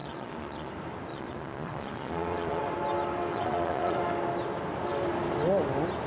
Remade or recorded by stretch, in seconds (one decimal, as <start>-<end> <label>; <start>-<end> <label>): 0.0-0.7 remade; 0.7-1.1 recorded; 1.1-2.6 remade; 2.6-3.3 recorded; 3.3-4.0 remade; 4.0-6.1 recorded